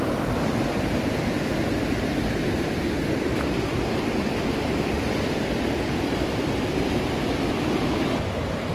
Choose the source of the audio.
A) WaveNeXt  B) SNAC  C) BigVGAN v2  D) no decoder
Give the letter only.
C